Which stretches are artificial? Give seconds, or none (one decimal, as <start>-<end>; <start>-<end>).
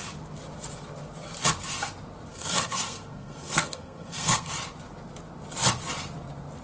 2.3-4.5